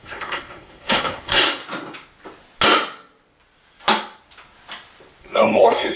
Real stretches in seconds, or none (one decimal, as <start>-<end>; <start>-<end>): 1.6-5.2